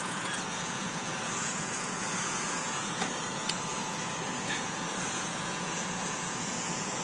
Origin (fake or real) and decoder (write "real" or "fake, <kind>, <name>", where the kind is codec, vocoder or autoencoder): fake, vocoder, Vocos